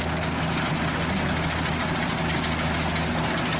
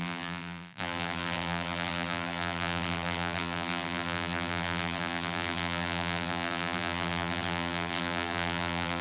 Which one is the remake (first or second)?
second